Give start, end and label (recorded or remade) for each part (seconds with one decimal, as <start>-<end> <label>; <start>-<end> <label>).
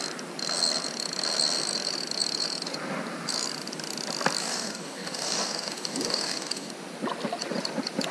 0.0-4.4 recorded; 4.4-6.7 remade; 6.7-8.1 recorded